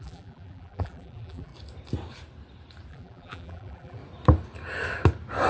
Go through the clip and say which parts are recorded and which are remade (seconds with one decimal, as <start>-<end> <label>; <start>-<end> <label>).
0.0-1.5 remade; 1.5-2.9 recorded; 2.9-4.0 remade; 4.0-5.5 recorded